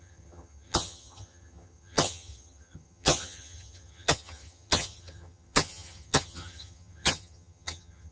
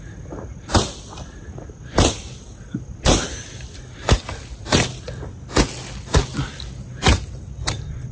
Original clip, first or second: second